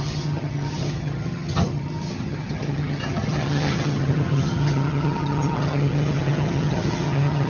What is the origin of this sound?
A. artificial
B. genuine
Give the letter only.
A